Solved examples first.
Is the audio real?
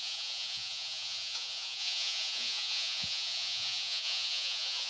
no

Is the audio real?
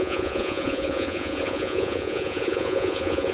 no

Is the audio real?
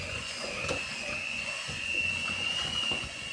no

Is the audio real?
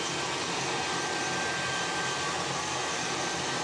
yes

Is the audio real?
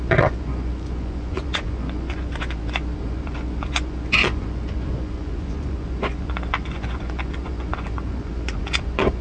no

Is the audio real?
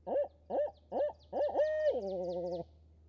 yes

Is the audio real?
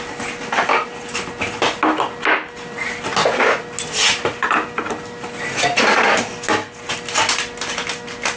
yes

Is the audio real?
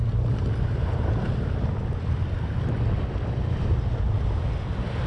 yes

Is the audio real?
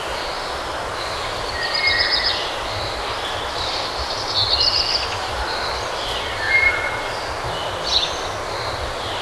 yes